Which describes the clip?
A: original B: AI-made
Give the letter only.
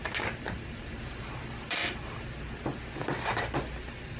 A